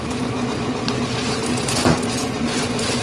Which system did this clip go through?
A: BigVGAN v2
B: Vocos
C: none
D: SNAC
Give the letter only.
B